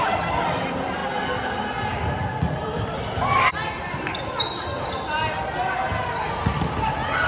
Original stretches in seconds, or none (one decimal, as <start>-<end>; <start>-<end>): 0.0-7.3